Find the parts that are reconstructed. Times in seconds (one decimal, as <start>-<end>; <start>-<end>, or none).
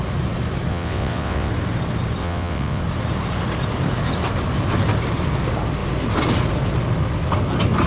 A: 0.7-1.5; 2.2-2.8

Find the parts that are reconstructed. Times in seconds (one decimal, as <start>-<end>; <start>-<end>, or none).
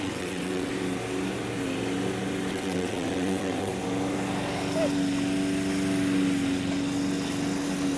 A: 0.0-0.7; 2.5-3.7